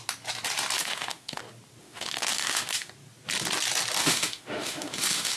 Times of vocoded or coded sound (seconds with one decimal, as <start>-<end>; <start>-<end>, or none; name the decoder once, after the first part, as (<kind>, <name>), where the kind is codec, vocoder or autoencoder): 0.8-1.4 (autoencoder, DAC-VAE); 1.8-2.9; 4.0-5.4